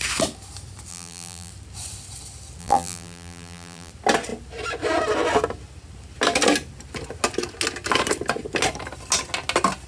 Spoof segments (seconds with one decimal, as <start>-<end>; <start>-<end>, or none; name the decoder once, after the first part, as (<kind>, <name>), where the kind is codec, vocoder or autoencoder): 0.9-1.5 (vocoder, BigVGAN v2); 2.6-3.9